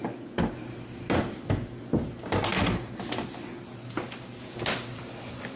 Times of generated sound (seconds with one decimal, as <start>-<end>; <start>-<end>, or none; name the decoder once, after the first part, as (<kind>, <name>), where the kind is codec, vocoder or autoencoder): none